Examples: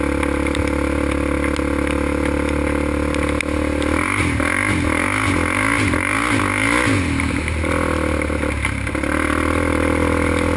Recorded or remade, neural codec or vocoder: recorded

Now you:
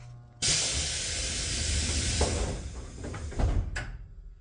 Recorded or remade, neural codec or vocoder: recorded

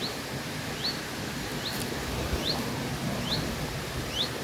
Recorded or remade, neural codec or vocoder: recorded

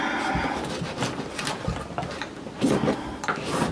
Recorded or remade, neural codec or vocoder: recorded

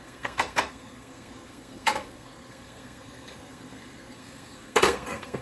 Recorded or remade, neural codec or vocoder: remade, codec, SNAC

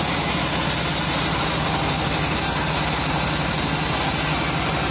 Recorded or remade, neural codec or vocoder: recorded